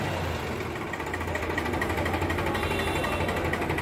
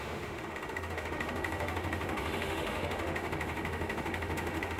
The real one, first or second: first